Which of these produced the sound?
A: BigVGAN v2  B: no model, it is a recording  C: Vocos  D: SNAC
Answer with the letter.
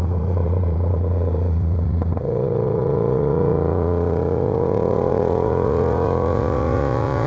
C